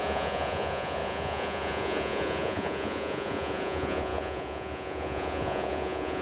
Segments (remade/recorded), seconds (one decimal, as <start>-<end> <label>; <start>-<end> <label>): 0.0-6.2 remade